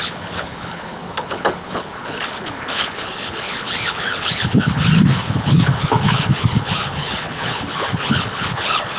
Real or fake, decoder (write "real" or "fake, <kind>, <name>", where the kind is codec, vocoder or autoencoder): fake, codec, HILCodec